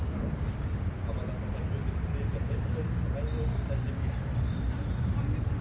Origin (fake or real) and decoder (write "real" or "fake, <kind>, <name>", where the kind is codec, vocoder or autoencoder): real